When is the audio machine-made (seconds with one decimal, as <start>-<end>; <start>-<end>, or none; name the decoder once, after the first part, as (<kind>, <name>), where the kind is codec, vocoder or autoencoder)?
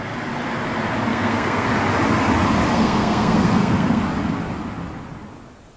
1.1-1.7 (codec, SNAC); 2.7-4.0